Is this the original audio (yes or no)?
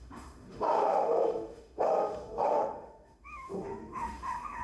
no